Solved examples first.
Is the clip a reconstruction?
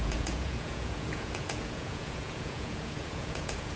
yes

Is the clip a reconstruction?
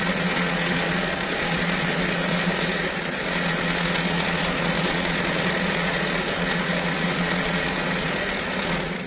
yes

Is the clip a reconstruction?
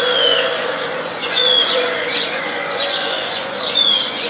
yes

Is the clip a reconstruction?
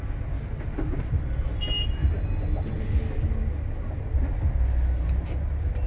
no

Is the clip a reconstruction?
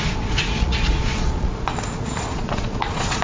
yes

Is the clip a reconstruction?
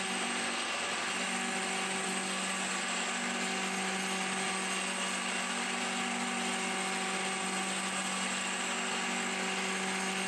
no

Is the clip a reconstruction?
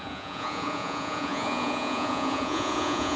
yes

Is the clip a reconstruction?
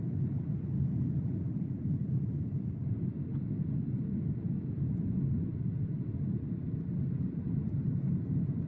no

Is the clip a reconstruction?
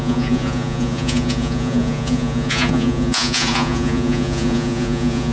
yes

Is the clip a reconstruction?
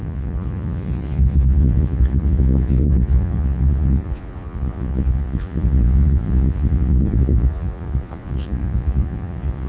yes